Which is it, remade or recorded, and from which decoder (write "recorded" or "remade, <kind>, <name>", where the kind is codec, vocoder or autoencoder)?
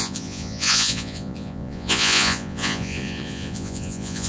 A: remade, vocoder, Vocos